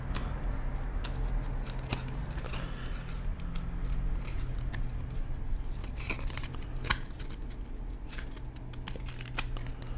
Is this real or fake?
real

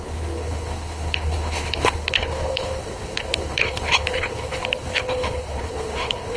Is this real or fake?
fake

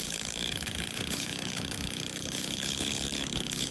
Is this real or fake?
fake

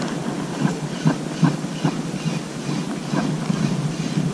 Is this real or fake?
real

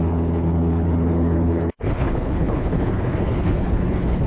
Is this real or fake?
fake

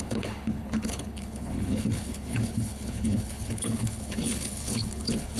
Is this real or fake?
fake